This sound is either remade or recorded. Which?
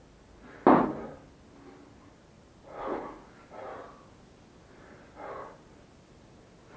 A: recorded